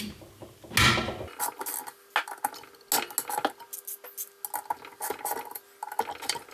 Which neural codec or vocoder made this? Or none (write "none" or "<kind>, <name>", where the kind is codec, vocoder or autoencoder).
none